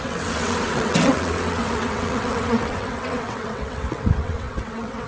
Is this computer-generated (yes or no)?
yes